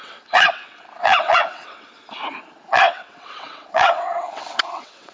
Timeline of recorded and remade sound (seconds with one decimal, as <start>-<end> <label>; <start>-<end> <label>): 0.0-1.9 remade; 1.9-2.7 recorded; 2.7-5.1 remade